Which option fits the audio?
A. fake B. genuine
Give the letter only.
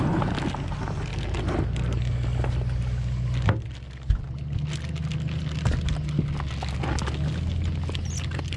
B